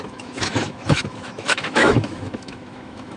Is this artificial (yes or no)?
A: yes